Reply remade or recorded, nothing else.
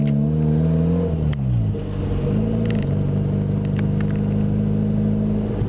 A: recorded